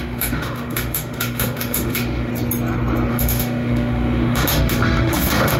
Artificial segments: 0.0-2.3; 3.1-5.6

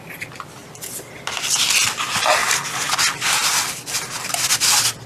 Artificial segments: 0.6-1.4